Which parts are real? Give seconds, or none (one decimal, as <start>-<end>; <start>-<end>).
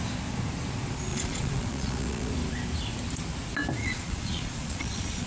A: 0.0-1.1; 2.3-3.8